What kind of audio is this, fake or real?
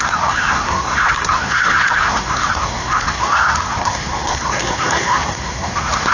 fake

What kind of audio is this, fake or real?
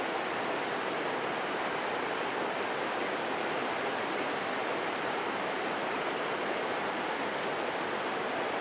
real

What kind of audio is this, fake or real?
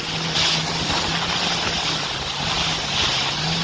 real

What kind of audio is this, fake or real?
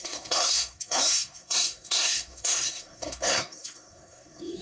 fake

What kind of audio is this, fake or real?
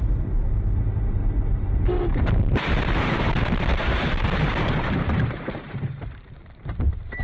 fake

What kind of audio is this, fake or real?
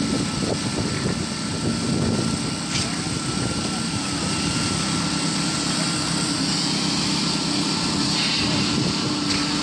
real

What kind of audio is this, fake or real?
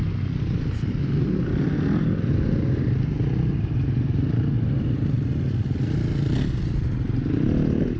real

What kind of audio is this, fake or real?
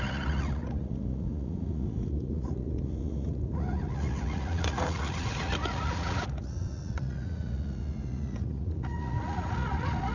fake